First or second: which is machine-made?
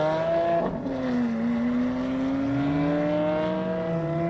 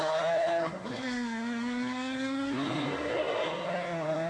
second